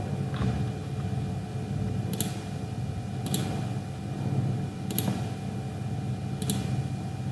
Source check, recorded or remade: recorded